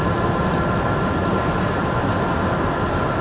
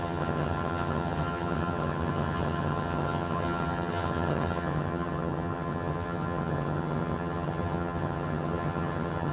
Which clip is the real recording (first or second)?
first